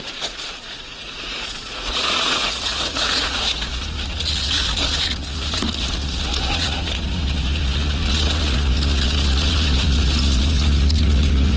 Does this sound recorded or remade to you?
remade